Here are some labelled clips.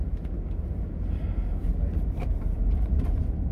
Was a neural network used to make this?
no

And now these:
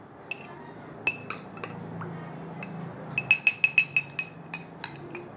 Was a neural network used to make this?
no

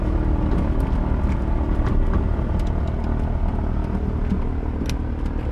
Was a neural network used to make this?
no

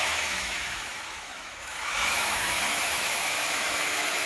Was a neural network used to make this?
yes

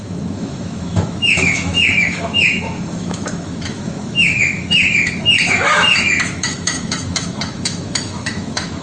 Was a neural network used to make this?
yes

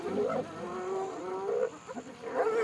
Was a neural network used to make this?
no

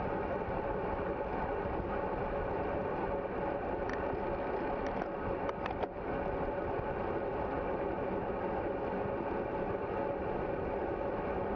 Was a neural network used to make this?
no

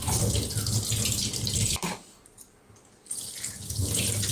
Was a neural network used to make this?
no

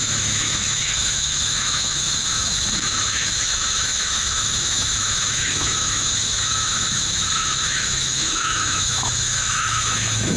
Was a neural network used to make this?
yes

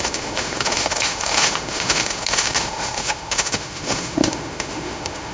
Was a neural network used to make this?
yes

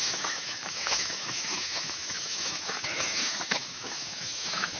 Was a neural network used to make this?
yes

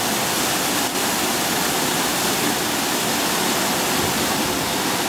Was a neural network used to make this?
no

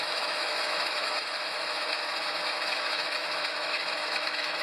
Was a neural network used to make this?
yes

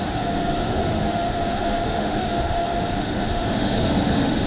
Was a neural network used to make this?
yes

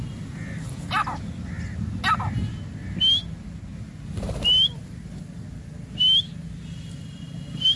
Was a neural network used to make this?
no